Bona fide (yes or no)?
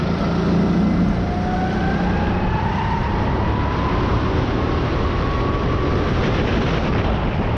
yes